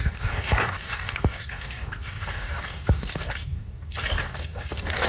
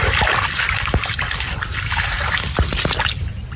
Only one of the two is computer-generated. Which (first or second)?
first